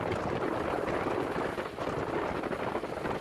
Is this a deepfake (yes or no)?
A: no